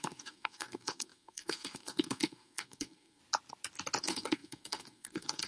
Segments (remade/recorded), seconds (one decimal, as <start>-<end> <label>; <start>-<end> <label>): 0.0-3.2 remade; 3.2-4.0 recorded; 4.0-5.5 remade